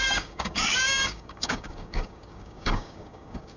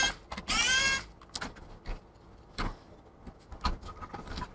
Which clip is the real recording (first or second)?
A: second